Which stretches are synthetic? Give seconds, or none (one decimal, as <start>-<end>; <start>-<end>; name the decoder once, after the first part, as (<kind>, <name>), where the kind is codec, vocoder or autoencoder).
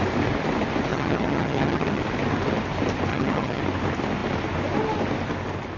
0.9-2.0 (vocoder, HiFi-GAN); 3.1-3.6